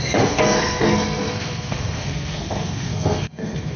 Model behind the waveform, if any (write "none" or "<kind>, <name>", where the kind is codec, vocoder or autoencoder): codec, SNAC